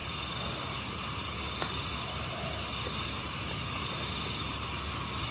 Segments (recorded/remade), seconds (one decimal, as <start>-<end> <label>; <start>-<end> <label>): 0.0-3.2 recorded; 3.2-5.3 remade